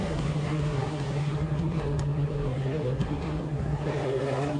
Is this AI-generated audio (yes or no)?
yes